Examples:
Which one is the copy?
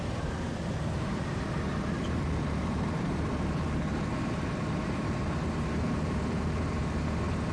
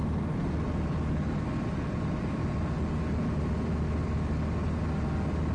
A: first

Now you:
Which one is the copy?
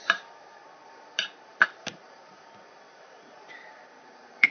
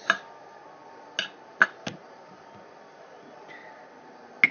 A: first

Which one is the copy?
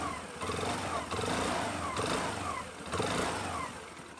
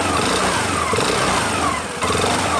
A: second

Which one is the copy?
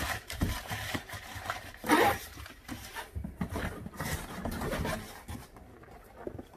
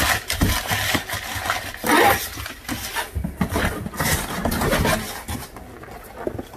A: first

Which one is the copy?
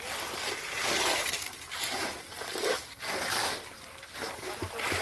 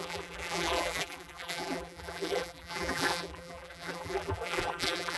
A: second